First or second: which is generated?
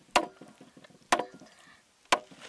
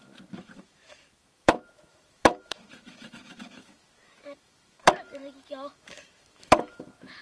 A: second